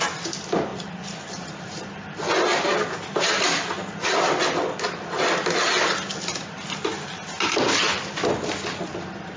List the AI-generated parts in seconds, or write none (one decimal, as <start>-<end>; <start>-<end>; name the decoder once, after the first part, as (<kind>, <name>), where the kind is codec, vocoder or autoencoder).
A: none